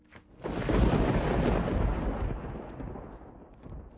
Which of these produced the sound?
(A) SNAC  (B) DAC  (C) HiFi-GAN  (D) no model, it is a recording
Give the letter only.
D